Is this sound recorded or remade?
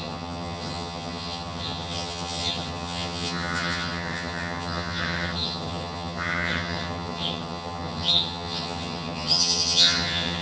remade